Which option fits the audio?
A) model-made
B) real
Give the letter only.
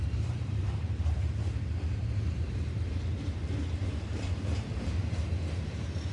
A